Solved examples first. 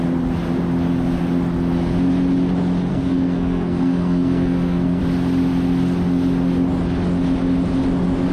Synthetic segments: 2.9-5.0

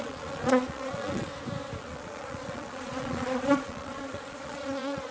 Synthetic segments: 0.0-1.3; 1.8-5.1

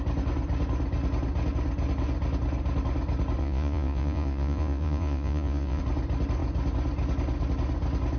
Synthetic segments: 3.4-5.8

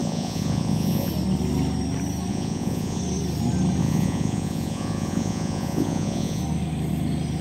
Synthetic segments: 0.0-1.1; 2.3-3.0; 3.8-6.4

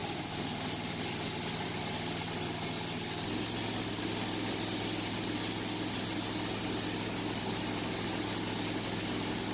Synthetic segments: none

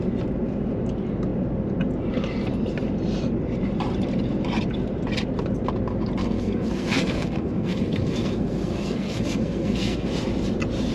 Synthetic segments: 6.2-10.1